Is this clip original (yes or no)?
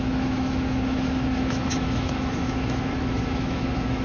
no